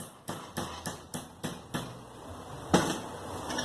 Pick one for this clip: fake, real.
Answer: real